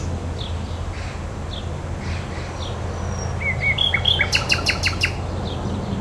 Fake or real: real